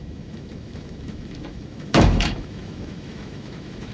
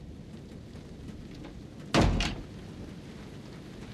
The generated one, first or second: first